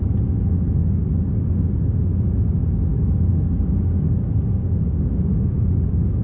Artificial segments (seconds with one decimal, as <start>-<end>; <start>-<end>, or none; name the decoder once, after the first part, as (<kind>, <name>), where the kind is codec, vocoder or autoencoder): 2.9-6.2 (codec, DAC)

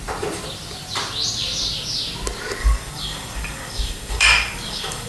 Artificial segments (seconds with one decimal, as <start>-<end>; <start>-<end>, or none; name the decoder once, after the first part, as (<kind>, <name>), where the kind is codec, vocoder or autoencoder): 2.6-5.1 (codec, DAC)

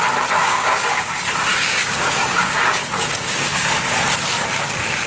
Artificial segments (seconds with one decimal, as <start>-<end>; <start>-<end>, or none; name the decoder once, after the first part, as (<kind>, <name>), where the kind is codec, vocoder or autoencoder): 0.4-1.1 (codec, DAC); 1.5-3.7

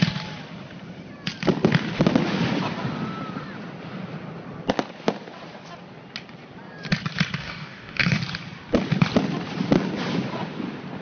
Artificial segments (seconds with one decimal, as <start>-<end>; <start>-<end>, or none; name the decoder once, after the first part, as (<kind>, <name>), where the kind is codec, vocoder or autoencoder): 7.4-8.2 (codec, DAC)

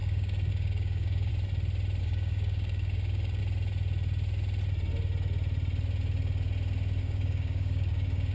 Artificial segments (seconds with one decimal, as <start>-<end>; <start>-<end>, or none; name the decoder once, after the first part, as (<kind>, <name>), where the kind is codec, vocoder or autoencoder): 0.0-1.3 (codec, DAC); 2.0-3.4; 7.0-8.3

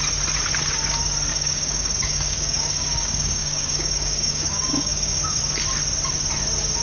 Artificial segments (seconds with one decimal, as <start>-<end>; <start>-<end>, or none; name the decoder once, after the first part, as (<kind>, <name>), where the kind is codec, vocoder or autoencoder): 1.3-5.4 (codec, DAC)

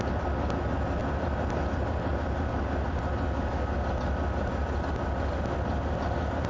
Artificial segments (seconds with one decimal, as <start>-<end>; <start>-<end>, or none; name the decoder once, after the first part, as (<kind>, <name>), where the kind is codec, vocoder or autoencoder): none

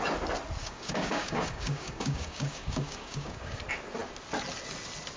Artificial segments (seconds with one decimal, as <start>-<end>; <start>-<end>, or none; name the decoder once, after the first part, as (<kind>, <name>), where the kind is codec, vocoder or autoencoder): 0.6-3.6 (codec, DAC)